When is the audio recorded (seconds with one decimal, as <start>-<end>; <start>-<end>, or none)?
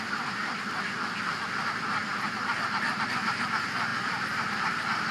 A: 0.0-3.9